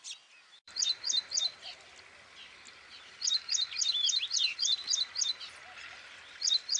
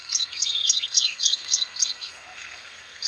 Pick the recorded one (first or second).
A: first